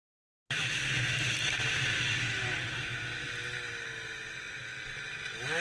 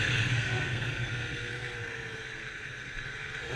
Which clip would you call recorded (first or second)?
first